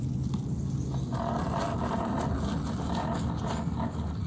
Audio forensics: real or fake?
real